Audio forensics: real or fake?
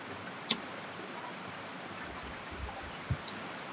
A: real